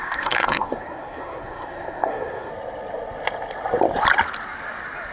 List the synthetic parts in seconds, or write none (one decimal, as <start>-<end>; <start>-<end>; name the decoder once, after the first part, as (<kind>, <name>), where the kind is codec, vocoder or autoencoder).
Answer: 0.0-2.5 (codec, SNAC)